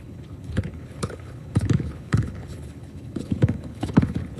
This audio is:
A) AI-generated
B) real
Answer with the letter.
A